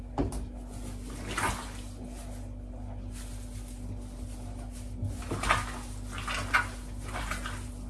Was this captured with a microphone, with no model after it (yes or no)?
yes